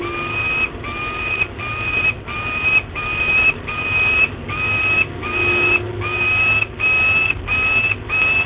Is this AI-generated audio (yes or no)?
no